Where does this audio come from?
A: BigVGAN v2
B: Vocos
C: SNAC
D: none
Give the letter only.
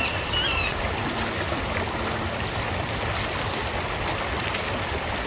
A